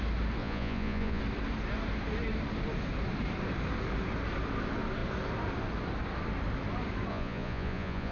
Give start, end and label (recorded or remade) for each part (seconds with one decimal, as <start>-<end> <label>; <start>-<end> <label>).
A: 0.0-0.4 recorded; 0.4-1.2 remade; 1.2-7.1 recorded; 7.1-8.1 remade

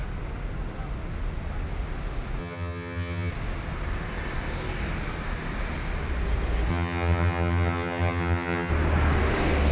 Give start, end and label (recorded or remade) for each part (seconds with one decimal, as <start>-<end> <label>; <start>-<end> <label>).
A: 0.0-2.4 recorded; 2.4-3.3 remade; 3.3-6.7 recorded; 6.7-8.7 remade; 8.7-9.7 recorded

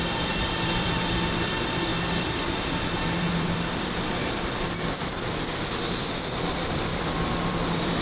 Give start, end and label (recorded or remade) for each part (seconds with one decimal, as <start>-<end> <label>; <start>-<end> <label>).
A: 0.0-8.0 remade

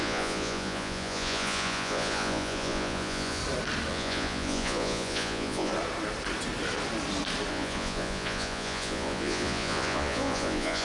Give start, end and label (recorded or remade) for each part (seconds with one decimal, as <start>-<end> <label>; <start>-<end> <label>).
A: 0.0-3.4 remade; 3.4-3.9 recorded; 3.9-5.7 remade; 5.7-7.5 recorded; 7.5-10.8 remade

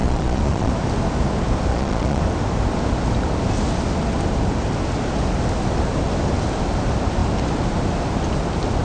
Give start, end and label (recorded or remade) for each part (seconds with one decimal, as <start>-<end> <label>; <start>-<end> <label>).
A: 0.0-0.7 remade; 0.7-1.7 recorded; 1.7-2.2 remade; 2.2-8.8 recorded

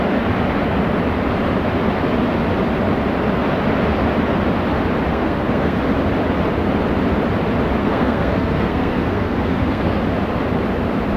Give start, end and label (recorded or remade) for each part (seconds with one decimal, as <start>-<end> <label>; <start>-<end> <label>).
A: 0.0-5.1 recorded; 5.1-5.8 remade; 5.8-7.8 recorded; 7.8-10.0 remade; 10.0-11.2 recorded